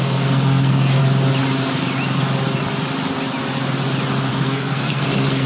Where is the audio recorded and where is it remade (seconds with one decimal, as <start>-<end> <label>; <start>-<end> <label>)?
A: 0.0-1.0 remade; 1.0-4.3 recorded; 4.3-5.5 remade